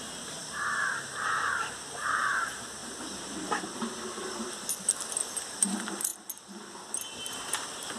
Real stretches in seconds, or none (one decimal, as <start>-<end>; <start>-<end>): 2.8-5.4; 6.1-7.3